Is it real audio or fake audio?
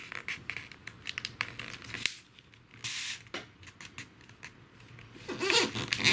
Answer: real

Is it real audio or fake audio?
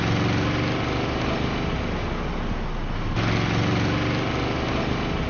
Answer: real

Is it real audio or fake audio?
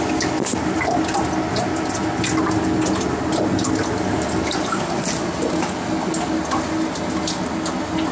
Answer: real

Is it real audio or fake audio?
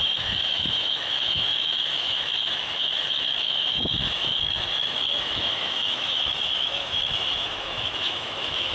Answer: fake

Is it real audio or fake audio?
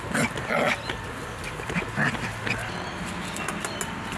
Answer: real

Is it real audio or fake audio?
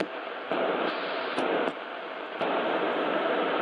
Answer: fake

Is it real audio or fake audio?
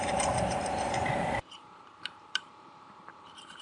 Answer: fake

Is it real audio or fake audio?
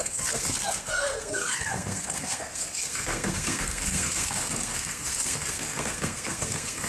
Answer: fake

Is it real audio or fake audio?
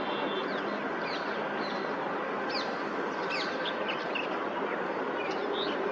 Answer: real